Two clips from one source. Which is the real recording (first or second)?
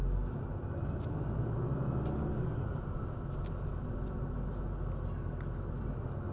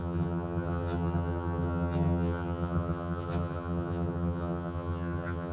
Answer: first